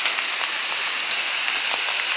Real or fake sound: real